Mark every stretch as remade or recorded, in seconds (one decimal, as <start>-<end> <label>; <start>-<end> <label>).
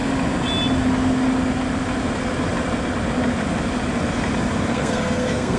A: 0.0-4.7 recorded; 4.7-5.6 remade